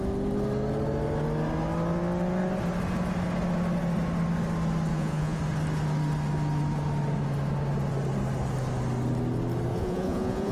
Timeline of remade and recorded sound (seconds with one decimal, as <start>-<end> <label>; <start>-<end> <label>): 0.0-4.9 recorded; 4.9-5.4 remade; 5.4-9.7 recorded; 9.7-10.5 remade